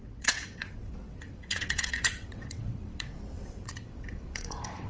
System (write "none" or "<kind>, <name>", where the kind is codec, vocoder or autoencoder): vocoder, WaveNeXt